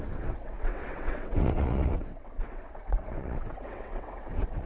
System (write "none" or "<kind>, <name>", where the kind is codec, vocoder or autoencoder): vocoder, WaveNeXt